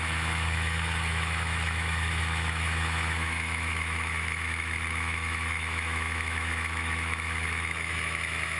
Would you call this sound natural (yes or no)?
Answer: no